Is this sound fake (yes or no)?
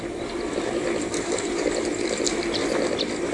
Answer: yes